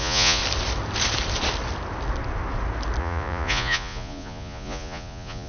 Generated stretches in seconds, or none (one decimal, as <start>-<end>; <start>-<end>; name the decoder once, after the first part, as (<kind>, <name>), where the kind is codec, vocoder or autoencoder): 0.0-0.4 (vocoder, Vocos); 3.0-5.5